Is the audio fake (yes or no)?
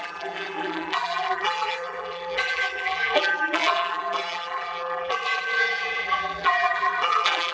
yes